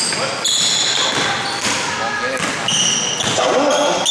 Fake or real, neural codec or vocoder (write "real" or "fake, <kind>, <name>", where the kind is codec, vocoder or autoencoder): real